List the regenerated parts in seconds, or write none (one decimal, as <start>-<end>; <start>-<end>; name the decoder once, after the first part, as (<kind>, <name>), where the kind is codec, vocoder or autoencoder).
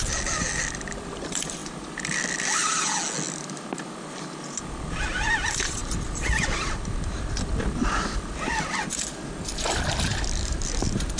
0.0-1.6 (vocoder, BigVGAN v2); 5.3-5.8; 7.6-11.2